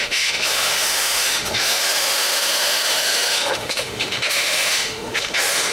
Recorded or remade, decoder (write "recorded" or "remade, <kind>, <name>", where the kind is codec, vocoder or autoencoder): remade, autoencoder, DAC-VAE